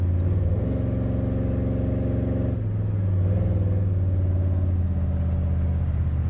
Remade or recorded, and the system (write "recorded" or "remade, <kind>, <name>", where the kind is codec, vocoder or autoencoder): recorded